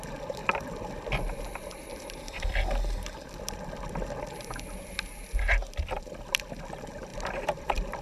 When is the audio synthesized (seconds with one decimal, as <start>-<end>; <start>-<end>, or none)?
0.4-3.1; 7.1-8.0